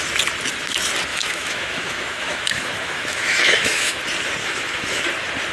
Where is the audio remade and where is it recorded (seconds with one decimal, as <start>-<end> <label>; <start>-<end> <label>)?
0.0-1.1 recorded; 1.1-4.0 remade; 4.0-4.4 recorded; 4.4-5.0 remade; 5.0-5.5 recorded